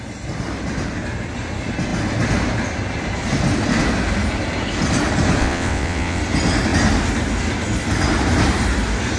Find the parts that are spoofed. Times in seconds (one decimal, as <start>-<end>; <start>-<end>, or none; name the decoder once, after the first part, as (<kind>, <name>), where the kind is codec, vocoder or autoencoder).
5.4-6.2 (vocoder, WaveNeXt)